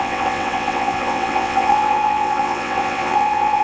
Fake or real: fake